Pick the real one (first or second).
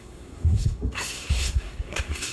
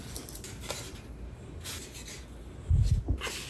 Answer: second